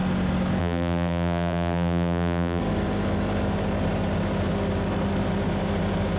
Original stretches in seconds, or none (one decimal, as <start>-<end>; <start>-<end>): 0.0-0.6; 2.6-6.2